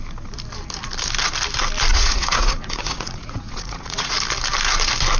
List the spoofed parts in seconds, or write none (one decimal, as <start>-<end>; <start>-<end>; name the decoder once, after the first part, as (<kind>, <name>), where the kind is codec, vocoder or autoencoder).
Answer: 1.9-4.1 (vocoder, Vocos)